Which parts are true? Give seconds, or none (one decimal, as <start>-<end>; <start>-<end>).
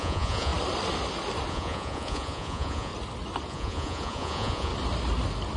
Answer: 0.5-1.5; 2.9-3.5; 4.7-5.6